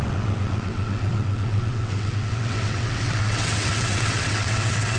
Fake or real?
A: fake